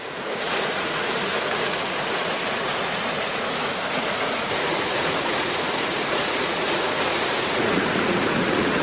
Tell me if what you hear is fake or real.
fake